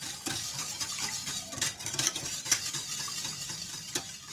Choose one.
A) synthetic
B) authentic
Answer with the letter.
B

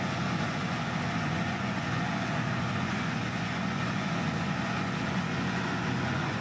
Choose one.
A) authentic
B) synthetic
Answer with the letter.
B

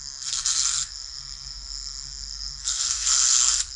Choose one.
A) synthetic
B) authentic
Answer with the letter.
A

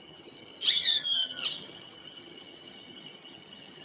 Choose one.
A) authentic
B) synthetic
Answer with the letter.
B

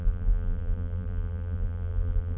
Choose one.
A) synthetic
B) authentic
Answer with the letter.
A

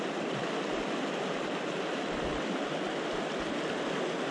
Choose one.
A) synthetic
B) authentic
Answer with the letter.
B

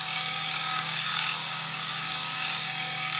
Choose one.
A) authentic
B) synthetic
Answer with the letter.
B